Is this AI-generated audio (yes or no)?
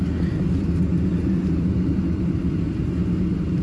no